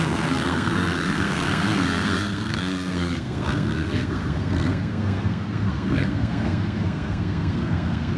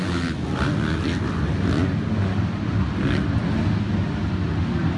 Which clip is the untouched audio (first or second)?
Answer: second